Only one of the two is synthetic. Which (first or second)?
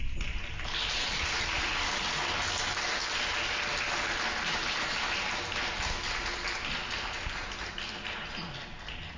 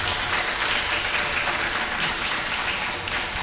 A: second